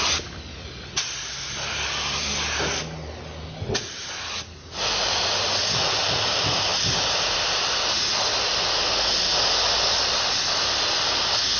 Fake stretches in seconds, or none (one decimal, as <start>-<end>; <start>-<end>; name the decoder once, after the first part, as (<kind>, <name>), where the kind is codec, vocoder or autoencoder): none